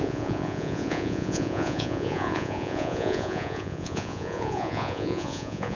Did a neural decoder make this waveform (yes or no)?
yes